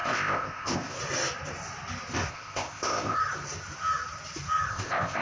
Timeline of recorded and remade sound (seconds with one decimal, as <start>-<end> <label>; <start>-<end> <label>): 0.0-1.0 remade; 1.0-2.3 recorded; 2.3-3.2 remade; 3.2-4.7 recorded; 4.7-5.2 remade